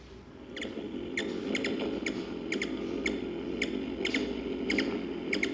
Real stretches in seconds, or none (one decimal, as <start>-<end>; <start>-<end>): 0.0-5.5